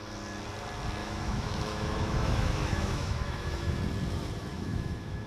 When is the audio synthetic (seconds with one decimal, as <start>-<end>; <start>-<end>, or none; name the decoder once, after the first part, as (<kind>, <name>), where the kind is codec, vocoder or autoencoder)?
1.0-3.8 (autoencoder, DAC-VAE); 4.5-5.3